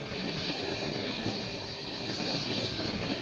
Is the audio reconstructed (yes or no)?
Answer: yes